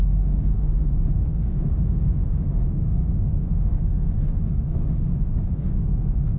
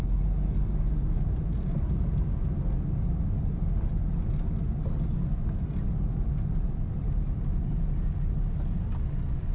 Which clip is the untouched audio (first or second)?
second